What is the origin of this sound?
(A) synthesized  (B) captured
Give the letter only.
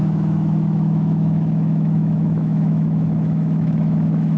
A